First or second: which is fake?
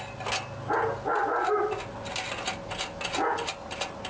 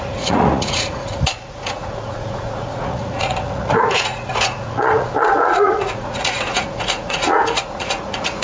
second